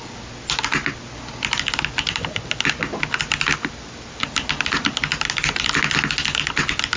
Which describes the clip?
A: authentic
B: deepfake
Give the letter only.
A